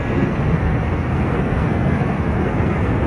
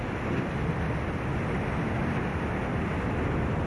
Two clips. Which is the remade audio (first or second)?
first